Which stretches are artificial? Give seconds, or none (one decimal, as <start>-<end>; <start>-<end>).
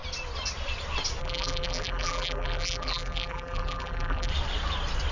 1.2-4.3